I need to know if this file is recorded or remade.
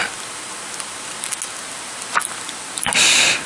recorded